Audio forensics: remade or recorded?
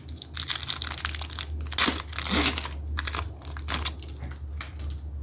recorded